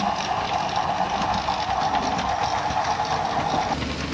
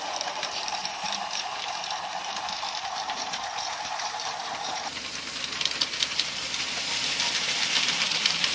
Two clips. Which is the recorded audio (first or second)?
first